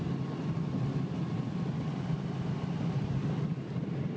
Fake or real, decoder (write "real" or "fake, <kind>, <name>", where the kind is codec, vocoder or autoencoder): real